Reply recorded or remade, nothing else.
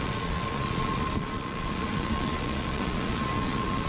remade